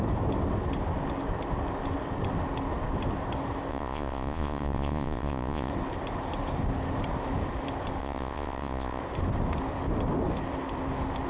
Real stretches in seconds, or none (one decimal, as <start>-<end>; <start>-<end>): 0.0-3.7; 5.7-8.0; 9.0-11.3